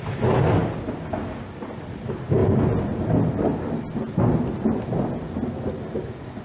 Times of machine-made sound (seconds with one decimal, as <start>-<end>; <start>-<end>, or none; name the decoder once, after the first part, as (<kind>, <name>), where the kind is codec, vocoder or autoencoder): none